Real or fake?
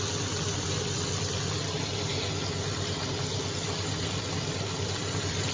real